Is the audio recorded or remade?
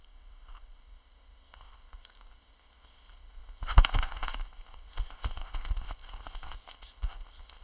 remade